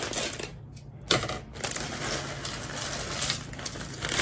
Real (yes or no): yes